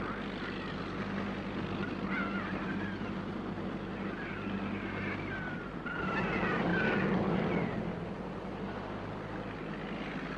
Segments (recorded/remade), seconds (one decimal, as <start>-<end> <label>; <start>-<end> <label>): 0.0-10.4 recorded